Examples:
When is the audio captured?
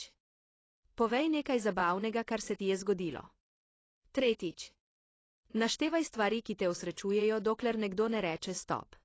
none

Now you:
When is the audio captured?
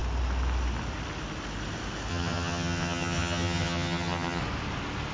0.0-2.1; 4.4-5.1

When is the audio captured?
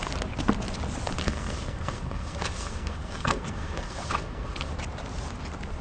0.0-1.2; 4.7-5.8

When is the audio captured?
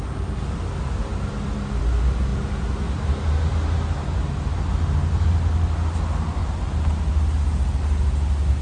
0.0-8.6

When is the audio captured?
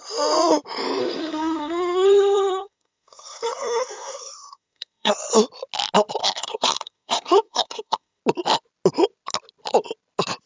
0.0-1.0; 5.1-6.2; 8.2-10.5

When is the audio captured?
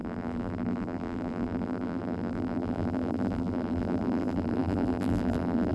none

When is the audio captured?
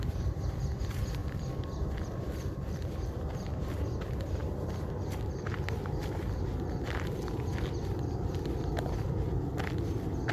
0.0-1.2; 3.2-4.4; 9.1-10.3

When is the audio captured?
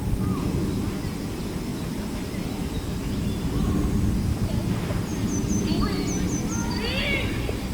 0.0-7.7